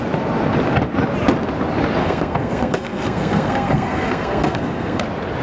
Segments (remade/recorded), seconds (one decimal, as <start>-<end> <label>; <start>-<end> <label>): 0.0-2.0 recorded; 2.0-5.0 remade; 5.0-5.4 recorded